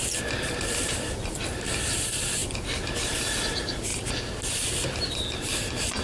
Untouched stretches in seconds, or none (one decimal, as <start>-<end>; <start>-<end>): 3.9-5.1